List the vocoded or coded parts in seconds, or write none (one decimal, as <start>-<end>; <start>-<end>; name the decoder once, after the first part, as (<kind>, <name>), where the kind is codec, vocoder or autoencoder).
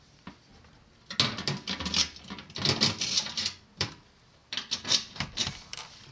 0.0-0.5 (vocoder, BigVGAN v2); 2.8-6.1